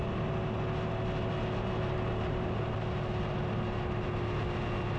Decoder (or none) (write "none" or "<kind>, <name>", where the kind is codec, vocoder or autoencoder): none